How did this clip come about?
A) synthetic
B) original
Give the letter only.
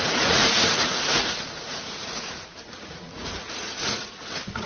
A